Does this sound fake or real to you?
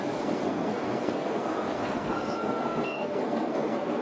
fake